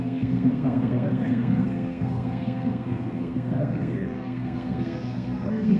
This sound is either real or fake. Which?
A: fake